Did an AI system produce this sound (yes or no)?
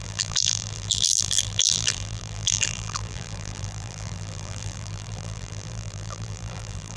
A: yes